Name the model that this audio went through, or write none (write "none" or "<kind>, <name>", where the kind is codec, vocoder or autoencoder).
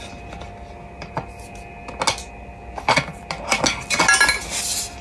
none